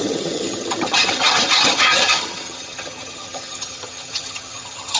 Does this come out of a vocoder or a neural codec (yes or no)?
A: yes